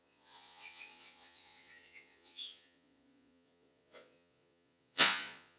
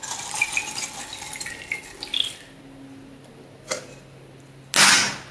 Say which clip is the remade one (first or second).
first